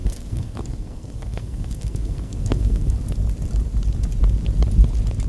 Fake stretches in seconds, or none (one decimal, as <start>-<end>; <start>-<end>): 0.0-2.9